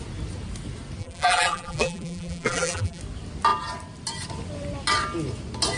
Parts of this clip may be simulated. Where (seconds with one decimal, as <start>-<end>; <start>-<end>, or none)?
1.0-3.0